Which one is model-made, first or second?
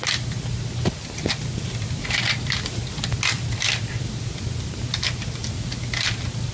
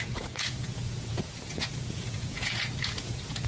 second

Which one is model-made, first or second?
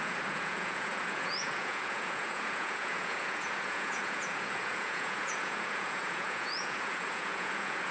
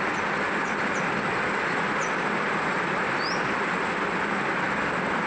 first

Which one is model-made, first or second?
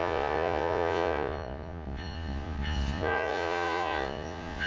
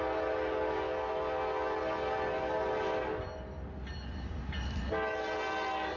first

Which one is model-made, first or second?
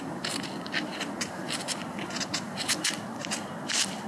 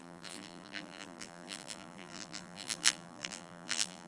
second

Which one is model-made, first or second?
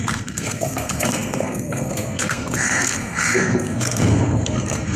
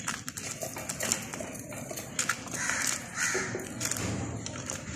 first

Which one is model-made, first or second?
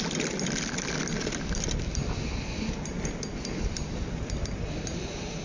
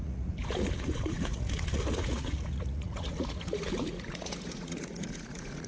second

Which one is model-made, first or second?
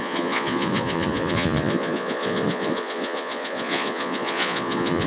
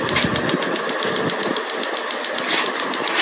first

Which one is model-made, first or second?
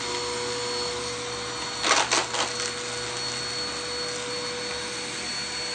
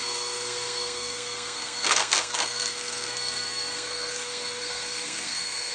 second